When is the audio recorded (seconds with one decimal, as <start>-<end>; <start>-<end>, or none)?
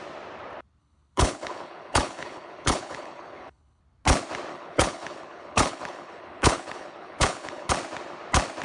0.0-0.8; 3.8-4.5; 7.7-8.6